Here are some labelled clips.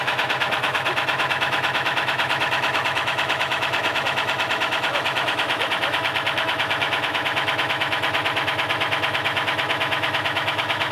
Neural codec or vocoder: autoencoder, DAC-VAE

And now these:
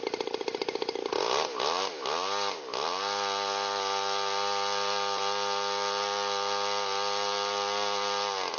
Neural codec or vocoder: none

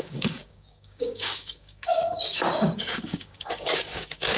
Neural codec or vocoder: codec, DAC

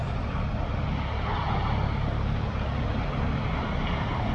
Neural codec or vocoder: none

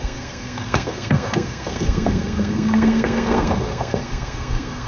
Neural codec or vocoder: codec, SNAC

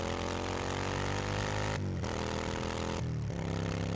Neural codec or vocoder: none